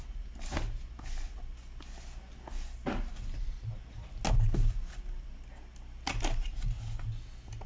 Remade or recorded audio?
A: recorded